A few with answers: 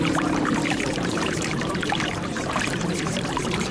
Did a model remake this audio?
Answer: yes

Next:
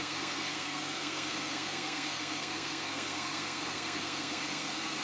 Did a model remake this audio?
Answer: yes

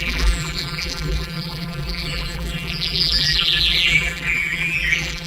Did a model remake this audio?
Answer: yes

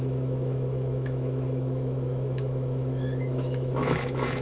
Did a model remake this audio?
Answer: yes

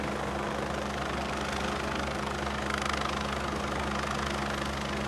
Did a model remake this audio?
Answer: no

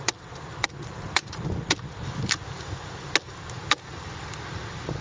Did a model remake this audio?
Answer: no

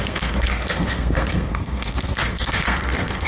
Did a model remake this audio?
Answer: yes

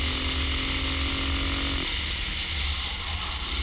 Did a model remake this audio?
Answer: no